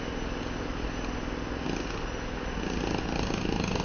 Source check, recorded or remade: recorded